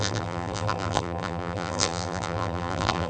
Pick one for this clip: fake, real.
fake